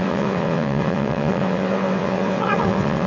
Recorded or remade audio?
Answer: remade